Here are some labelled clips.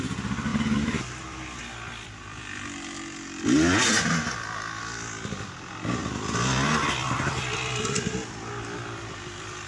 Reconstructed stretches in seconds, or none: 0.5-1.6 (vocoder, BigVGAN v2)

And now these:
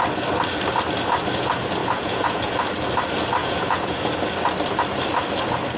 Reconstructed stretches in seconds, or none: 1.8-2.4 (vocoder, Vocos); 3.4-4.1

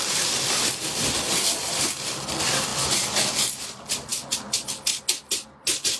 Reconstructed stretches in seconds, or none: 0.0-2.7 (vocoder, BigVGAN v2); 3.6-4.1

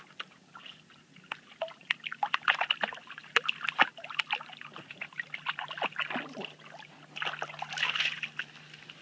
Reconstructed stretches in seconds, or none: none

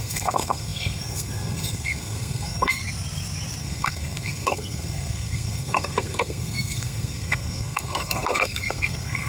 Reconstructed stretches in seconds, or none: 0.0-2.8 (codec, SNAC); 3.6-9.3

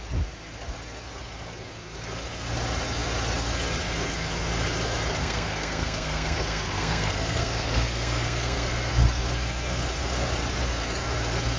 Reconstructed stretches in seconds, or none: 5.2-8.9 (codec, SNAC)